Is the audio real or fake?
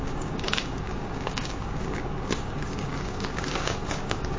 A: fake